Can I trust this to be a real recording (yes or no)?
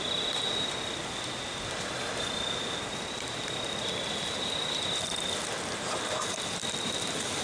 yes